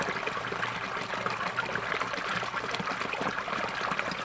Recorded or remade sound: recorded